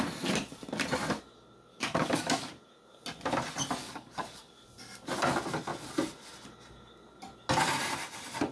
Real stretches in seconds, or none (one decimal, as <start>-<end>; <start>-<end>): 0.0-1.7; 2.5-3.8; 4.5-8.5